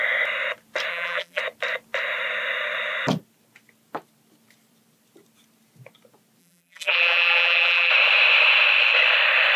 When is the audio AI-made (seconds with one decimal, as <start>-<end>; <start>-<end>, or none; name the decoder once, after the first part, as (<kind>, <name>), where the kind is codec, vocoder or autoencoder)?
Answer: 0.9-1.4 (vocoder, BigVGAN v2); 6.4-7.9